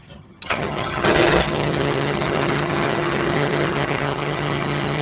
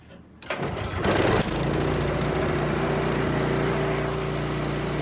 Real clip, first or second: second